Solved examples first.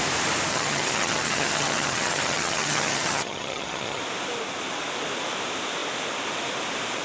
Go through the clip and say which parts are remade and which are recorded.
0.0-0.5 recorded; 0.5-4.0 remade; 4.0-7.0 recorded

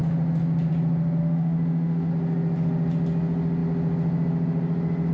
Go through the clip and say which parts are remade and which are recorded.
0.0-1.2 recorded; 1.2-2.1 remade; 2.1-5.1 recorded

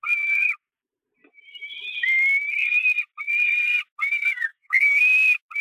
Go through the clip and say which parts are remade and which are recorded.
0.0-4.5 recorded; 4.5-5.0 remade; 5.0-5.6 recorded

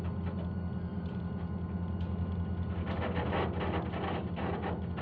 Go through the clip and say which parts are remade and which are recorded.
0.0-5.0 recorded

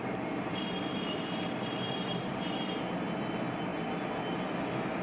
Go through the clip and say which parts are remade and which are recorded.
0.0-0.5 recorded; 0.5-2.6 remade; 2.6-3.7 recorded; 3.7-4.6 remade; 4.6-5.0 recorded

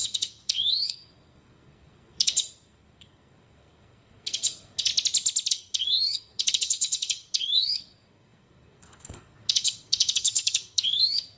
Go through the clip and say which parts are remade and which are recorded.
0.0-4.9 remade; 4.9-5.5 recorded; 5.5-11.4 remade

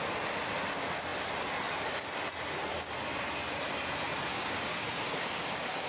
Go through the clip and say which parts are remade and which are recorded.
0.0-4.3 recorded; 4.3-5.9 remade